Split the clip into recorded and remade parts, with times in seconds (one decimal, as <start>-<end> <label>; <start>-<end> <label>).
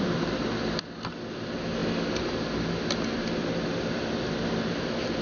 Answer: 0.0-5.2 recorded